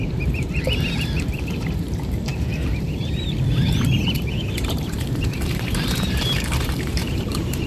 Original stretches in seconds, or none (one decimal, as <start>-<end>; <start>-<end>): 2.3-3.0